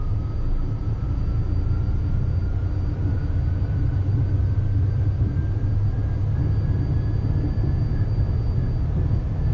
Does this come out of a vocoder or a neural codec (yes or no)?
no